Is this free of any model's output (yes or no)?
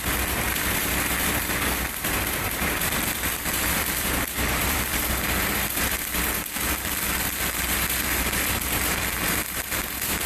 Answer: no